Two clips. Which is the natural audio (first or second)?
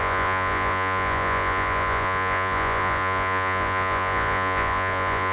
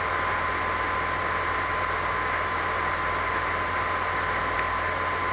second